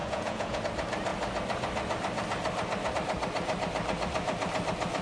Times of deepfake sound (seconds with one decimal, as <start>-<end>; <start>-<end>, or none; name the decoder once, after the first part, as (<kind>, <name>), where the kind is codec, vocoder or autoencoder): 0.0-0.6 (vocoder, Vocos)